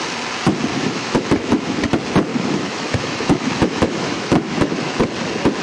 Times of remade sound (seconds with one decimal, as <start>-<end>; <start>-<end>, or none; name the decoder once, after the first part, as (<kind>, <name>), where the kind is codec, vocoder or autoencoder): 0.7-1.8 (autoencoder, DAC-VAE); 2.3-5.0